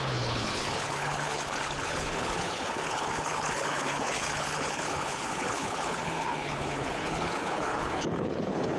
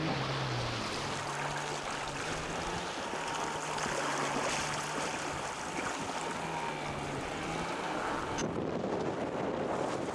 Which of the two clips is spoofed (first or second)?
first